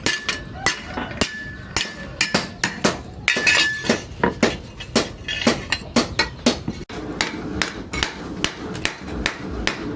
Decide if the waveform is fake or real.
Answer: real